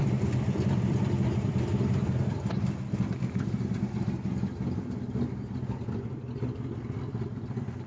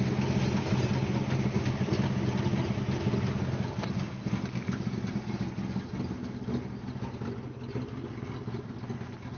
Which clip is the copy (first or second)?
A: first